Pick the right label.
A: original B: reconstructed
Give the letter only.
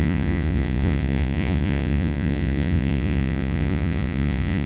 B